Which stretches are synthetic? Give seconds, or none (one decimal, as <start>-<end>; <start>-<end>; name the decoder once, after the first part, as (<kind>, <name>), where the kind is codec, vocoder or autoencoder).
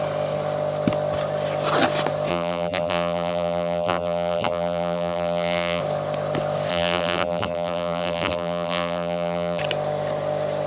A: 2.3-5.8 (vocoder, BigVGAN v2); 6.7-9.6